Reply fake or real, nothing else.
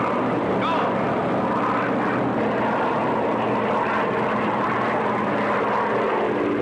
real